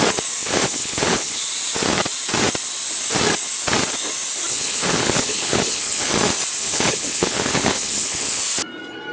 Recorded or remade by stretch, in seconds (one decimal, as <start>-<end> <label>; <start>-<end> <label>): 0.0-0.4 recorded; 0.4-1.4 remade; 1.4-4.5 recorded; 4.5-6.1 remade; 6.1-6.6 recorded; 6.6-8.4 remade; 8.4-9.1 recorded